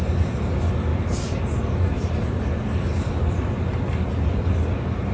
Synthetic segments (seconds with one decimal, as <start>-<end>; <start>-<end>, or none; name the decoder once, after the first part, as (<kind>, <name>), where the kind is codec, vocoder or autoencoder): none